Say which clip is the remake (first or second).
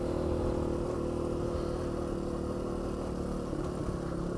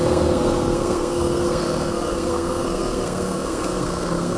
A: second